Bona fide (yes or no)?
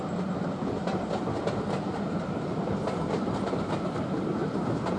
no